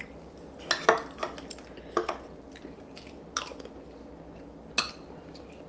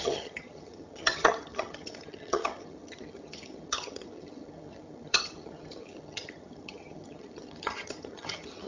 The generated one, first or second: second